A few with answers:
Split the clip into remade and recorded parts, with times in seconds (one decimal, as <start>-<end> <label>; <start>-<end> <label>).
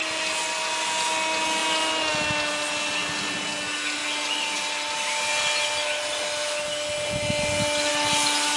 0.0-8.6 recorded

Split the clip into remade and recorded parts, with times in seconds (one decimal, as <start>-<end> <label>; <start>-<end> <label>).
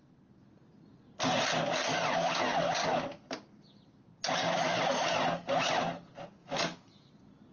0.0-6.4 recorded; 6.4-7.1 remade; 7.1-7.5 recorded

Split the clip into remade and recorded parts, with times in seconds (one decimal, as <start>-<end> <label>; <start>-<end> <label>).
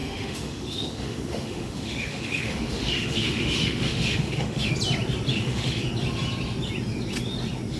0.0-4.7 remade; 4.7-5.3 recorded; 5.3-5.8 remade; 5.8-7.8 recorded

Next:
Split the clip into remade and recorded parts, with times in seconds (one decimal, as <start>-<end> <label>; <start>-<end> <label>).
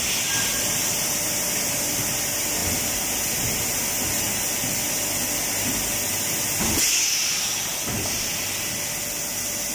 0.0-9.7 recorded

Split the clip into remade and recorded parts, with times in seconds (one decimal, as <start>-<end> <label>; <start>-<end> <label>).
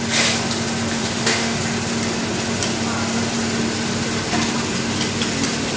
0.0-1.0 recorded; 1.0-1.6 remade; 1.6-5.8 recorded